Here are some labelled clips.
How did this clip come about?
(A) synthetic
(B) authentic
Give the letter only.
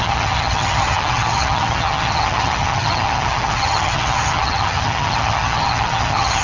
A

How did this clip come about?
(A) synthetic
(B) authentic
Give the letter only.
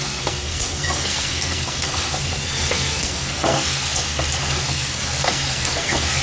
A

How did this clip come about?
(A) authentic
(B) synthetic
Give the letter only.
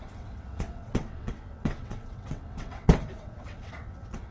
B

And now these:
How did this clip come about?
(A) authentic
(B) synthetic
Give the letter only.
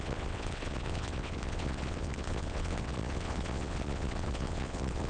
B